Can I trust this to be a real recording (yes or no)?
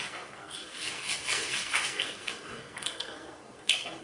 no